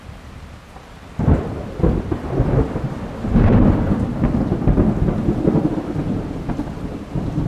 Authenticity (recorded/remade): remade